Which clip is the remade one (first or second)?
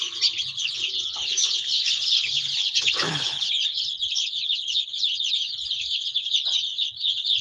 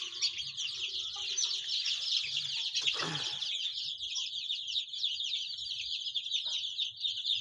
first